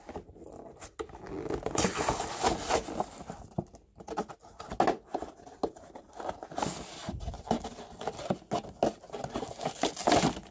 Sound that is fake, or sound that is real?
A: real